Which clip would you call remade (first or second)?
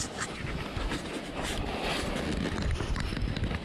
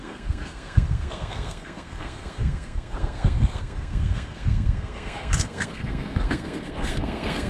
second